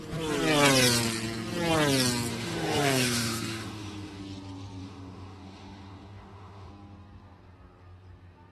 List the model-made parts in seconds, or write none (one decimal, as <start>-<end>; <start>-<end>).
2.3-4.2; 4.8-6.7